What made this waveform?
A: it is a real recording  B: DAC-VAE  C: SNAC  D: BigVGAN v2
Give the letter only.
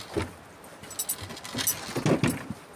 A